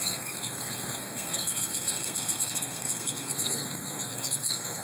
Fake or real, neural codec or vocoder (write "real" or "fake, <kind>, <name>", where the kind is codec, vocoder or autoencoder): fake, codec, SNAC